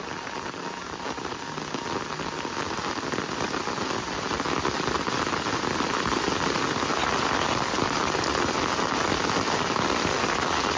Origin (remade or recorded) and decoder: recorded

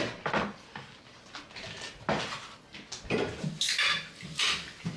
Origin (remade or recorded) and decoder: recorded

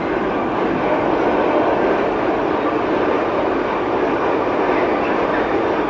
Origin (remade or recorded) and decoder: recorded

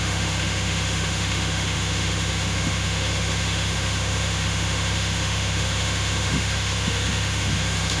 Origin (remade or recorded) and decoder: remade, autoencoder, DAC-VAE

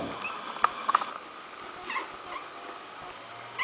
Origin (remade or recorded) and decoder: recorded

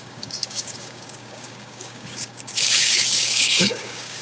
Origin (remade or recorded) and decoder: remade, codec, DAC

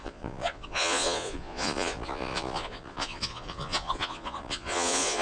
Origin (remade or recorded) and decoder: remade, vocoder, Vocos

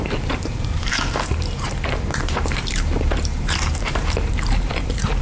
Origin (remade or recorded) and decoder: remade, vocoder, BigVGAN v2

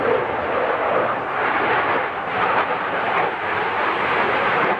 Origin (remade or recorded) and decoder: recorded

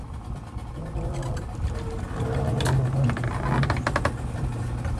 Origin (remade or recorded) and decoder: recorded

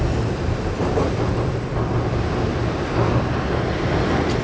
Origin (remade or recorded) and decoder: recorded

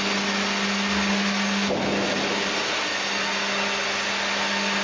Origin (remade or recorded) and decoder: recorded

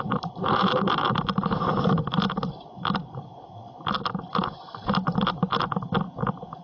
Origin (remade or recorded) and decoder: recorded